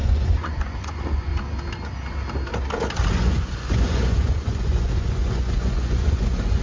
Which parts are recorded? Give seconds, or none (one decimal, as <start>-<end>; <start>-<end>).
1.3-3.1